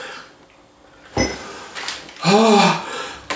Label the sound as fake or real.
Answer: real